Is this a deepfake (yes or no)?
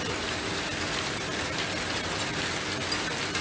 no